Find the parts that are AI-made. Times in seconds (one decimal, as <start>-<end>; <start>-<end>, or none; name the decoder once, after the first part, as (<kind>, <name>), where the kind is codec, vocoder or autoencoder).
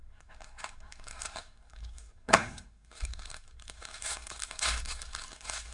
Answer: 0.0-5.7 (codec, SNAC)